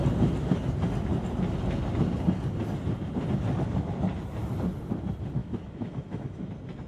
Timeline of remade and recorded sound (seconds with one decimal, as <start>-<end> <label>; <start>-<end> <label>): 0.0-5.4 recorded; 5.4-6.5 remade; 6.5-6.9 recorded

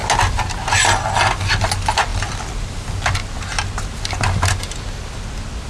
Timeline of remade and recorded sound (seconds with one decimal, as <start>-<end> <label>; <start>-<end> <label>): 0.0-5.7 recorded

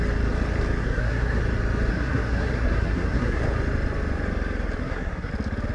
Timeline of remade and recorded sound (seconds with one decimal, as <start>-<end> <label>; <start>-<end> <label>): 0.0-0.8 recorded; 0.8-1.4 remade; 1.4-1.9 recorded; 1.9-3.4 remade; 3.4-4.8 recorded; 4.8-5.3 remade; 5.3-5.7 recorded

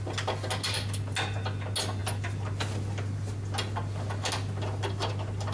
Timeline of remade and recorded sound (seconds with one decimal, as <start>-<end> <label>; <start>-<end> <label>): 0.0-5.5 recorded

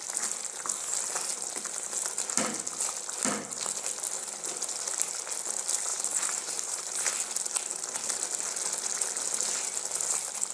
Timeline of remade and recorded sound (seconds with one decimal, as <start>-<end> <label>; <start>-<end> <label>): 0.0-5.9 recorded; 5.9-7.1 remade; 7.1-10.5 recorded

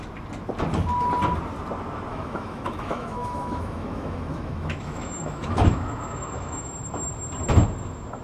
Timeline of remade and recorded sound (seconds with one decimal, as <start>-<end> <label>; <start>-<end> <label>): 0.0-2.1 recorded; 2.1-6.7 remade; 6.7-8.2 recorded

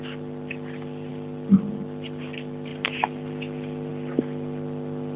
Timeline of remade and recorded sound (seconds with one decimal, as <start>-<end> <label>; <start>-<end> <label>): 0.0-5.2 recorded

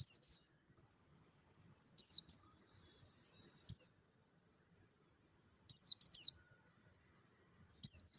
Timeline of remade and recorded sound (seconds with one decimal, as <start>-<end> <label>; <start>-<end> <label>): 0.0-8.2 recorded